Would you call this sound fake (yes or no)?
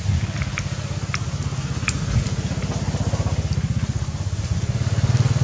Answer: no